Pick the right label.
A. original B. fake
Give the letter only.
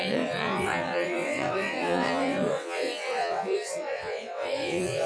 B